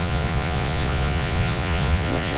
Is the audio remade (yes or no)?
yes